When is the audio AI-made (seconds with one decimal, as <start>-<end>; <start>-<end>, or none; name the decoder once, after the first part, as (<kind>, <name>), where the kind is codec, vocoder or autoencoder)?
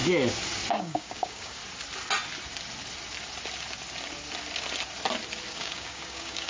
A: 0.7-1.6 (codec, DAC); 5.5-6.5